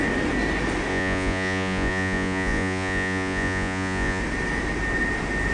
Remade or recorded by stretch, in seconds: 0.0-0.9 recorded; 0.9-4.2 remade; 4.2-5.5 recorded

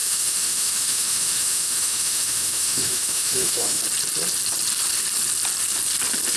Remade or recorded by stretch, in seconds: 0.0-3.8 remade; 3.8-6.4 recorded